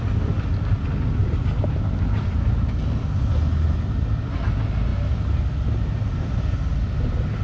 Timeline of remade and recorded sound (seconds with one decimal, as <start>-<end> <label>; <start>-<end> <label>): 0.0-7.4 recorded